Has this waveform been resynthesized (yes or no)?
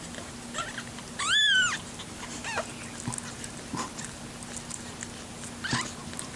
no